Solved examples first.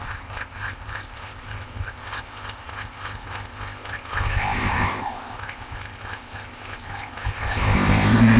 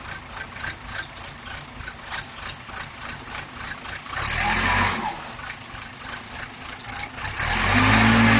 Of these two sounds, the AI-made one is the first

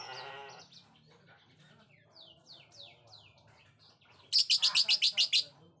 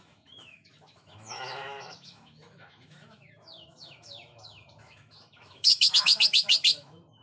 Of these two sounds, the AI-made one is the second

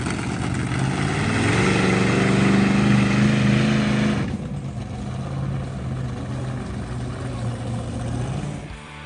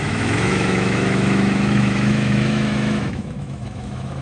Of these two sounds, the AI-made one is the second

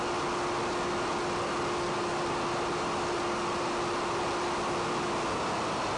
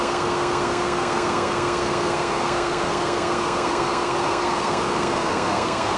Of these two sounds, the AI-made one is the second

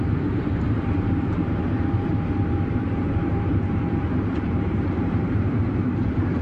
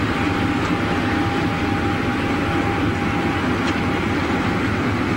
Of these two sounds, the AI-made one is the first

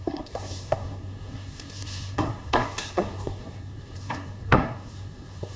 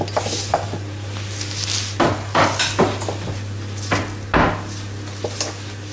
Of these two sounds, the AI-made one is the first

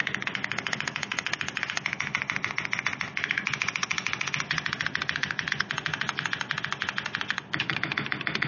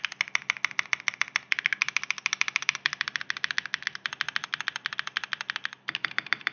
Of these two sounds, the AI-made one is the first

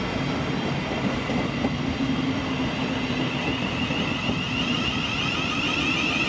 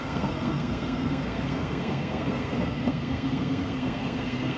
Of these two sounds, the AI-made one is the second